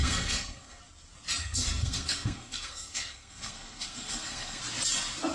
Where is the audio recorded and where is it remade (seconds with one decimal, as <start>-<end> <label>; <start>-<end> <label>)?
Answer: 0.0-0.8 remade; 0.8-1.4 recorded; 1.4-4.6 remade; 4.6-5.3 recorded